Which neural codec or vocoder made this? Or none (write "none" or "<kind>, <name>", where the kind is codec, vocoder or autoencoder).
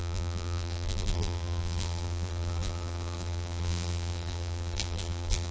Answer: vocoder, BigVGAN v2